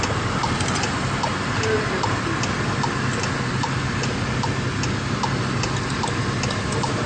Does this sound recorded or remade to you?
recorded